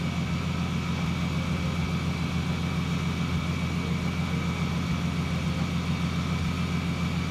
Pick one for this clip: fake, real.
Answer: real